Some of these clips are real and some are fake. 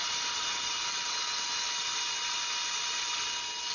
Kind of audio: real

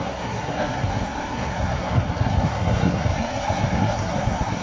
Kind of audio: fake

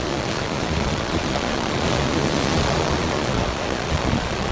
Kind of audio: fake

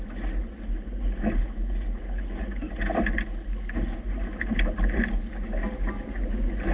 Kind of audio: real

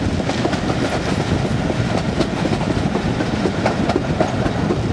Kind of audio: real